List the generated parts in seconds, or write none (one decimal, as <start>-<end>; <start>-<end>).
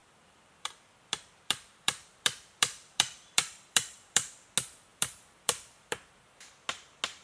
0.0-4.3; 4.9-6.5